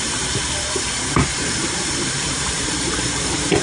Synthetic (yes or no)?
yes